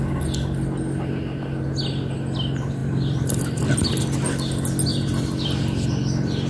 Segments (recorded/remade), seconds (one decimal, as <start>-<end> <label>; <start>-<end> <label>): 0.0-2.8 recorded; 2.8-3.6 remade; 3.6-4.9 recorded; 4.9-6.5 remade